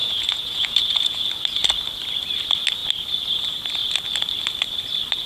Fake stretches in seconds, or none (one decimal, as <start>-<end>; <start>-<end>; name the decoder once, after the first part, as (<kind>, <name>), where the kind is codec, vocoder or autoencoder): 0.0-1.2 (vocoder, Vocos)